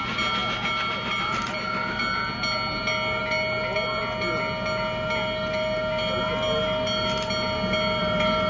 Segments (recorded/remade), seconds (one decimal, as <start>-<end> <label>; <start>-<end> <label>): 0.0-8.0 recorded; 8.0-8.5 remade